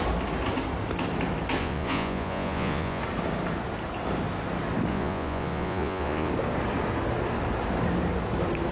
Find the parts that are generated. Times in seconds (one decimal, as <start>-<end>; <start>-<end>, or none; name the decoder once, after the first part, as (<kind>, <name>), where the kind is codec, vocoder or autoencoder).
1.6-3.0 (vocoder, Vocos); 4.9-6.3